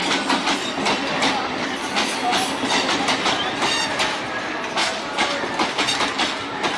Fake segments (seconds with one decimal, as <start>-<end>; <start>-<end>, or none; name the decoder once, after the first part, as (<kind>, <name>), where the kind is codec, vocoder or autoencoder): 0.0-3.4 (vocoder, BigVGAN v2); 4.8-5.4